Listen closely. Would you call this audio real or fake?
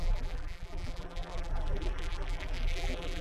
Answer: fake